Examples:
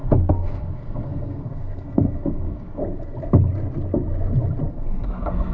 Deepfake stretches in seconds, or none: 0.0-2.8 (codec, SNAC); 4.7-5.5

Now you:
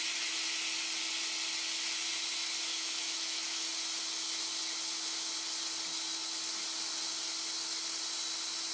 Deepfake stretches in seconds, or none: 2.7-3.7 (autoencoder, DAC-VAE)

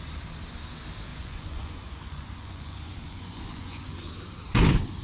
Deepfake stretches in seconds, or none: 1.1-4.1 (vocoder, Vocos)

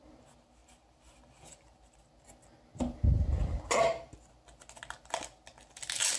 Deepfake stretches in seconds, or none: none

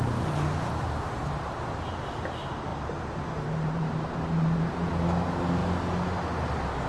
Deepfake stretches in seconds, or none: 2.7-4.9 (vocoder, BigVGAN v2)